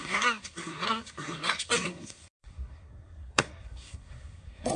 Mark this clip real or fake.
fake